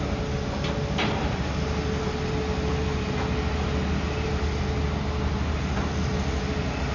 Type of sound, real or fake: real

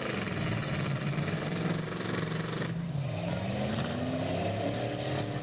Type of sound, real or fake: real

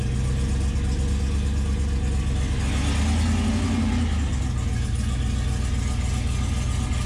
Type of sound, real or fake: real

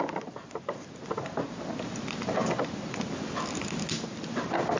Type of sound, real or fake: real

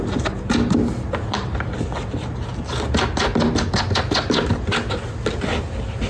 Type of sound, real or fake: real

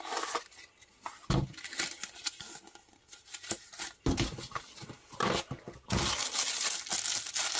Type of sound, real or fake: real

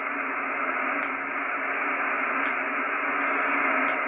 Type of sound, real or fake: real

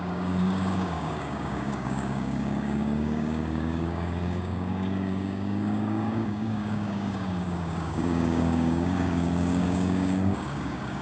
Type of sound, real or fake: fake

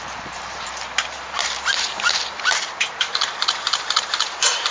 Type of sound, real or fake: fake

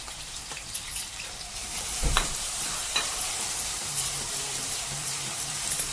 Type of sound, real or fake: fake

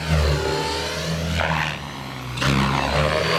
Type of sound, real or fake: real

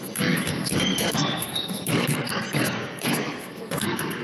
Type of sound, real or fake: fake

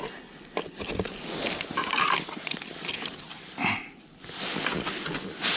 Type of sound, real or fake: real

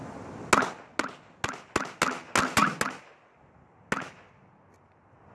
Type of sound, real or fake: real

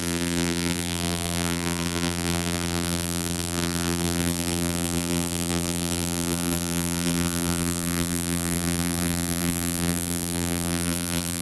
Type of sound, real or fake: fake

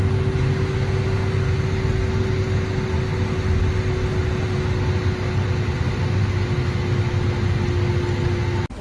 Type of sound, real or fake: real